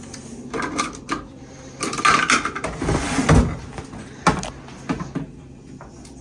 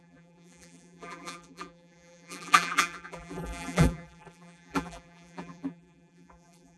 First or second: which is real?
first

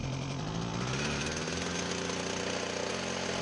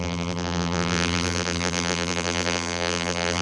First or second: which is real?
first